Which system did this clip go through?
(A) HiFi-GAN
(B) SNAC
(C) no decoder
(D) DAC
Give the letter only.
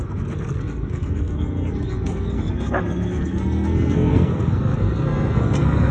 B